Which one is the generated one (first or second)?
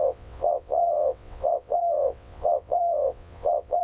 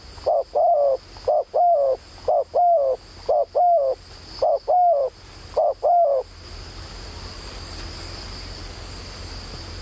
first